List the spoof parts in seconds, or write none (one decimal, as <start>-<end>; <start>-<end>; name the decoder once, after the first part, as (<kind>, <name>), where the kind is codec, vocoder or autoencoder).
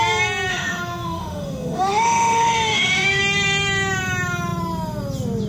0.5-3.2 (autoencoder, DAC-VAE)